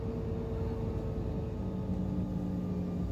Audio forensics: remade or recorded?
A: recorded